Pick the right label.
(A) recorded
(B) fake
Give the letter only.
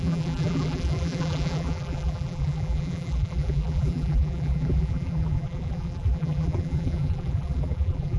B